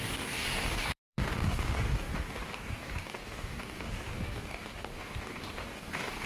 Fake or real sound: fake